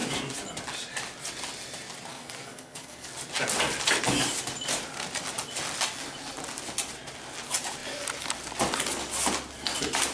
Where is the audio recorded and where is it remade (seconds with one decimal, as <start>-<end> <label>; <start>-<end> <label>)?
0.0-2.1 recorded; 2.1-3.1 remade; 3.1-10.1 recorded